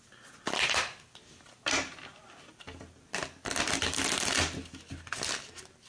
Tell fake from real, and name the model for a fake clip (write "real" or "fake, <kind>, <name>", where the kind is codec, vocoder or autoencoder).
real